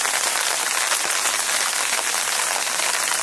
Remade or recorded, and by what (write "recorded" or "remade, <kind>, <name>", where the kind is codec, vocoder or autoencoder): recorded